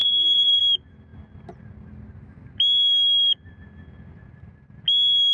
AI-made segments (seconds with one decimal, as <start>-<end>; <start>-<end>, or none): 0.0-0.6